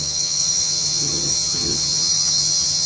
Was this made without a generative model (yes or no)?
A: no